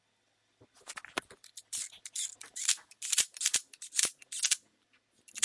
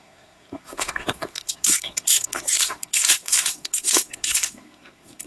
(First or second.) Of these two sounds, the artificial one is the second